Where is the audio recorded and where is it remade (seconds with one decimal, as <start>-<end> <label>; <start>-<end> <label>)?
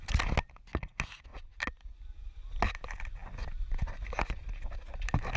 0.0-5.4 recorded